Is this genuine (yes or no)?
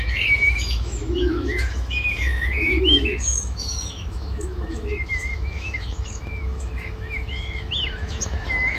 no